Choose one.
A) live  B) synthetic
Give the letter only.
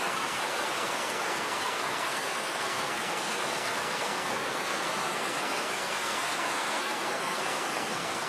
B